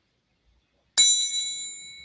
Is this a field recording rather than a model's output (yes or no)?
yes